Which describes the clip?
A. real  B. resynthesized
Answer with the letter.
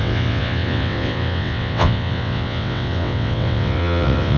B